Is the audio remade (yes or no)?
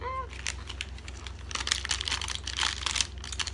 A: no